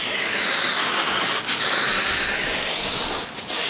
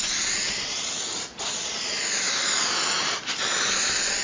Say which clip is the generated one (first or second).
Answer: first